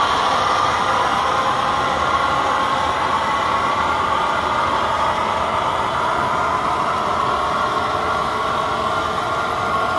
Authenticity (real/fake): real